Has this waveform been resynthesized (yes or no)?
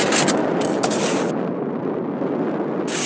no